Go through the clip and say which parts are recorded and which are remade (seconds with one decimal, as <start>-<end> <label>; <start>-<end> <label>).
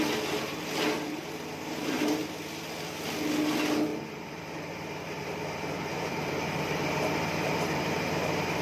0.0-1.2 recorded; 1.2-2.4 remade; 2.4-3.9 recorded; 3.9-8.6 remade